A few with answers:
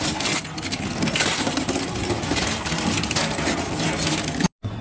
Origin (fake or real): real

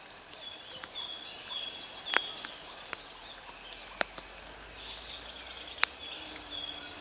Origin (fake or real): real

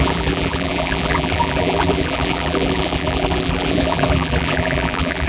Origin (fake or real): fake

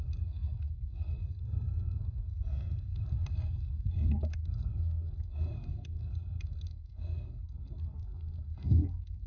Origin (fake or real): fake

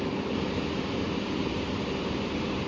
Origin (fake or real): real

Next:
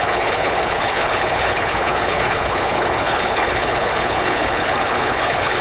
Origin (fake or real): fake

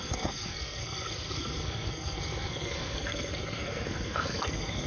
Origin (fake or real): fake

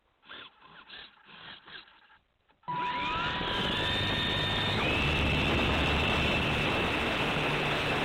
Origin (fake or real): real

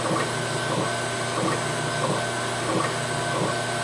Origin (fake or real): real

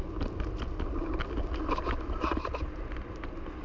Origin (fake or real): real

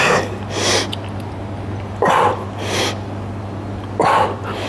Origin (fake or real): real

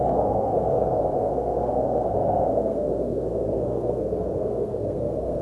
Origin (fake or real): fake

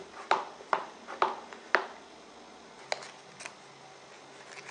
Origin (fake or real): real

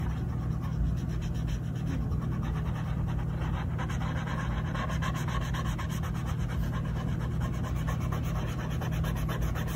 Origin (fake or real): real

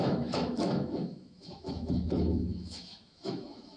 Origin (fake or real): fake